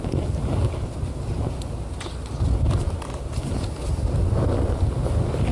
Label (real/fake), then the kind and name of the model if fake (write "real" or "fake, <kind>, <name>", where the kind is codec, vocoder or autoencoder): real